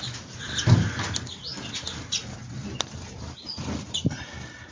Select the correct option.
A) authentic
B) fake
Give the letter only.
A